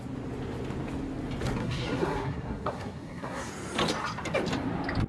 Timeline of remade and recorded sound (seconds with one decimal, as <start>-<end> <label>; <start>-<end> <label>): 0.0-1.6 recorded; 1.6-3.5 remade; 3.5-5.1 recorded